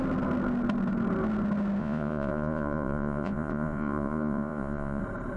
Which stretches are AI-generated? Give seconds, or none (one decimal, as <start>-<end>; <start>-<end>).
1.8-5.0